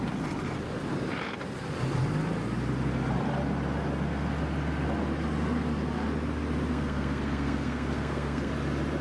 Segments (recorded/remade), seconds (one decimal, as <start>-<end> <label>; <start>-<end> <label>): 0.0-6.7 recorded; 6.7-8.5 remade; 8.5-9.0 recorded